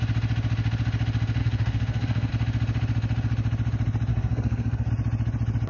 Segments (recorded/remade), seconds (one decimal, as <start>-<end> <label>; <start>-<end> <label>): 0.0-1.4 recorded; 1.4-2.3 remade; 2.3-4.1 recorded; 4.1-4.9 remade; 4.9-5.7 recorded